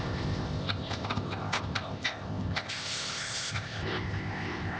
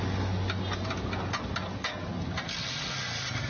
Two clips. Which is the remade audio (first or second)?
first